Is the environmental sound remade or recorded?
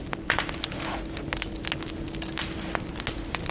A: recorded